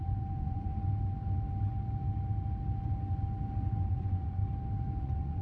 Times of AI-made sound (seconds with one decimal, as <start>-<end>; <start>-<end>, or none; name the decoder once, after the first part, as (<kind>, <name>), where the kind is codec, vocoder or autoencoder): 0.0-0.7 (vocoder, Vocos); 3.9-4.4; 5.0-5.4